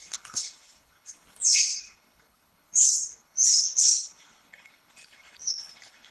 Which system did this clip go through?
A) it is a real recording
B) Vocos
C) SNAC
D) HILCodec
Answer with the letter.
D